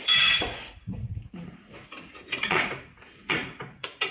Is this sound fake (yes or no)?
yes